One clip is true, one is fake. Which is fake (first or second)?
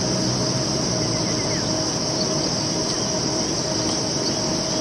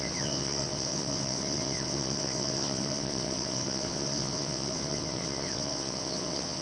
second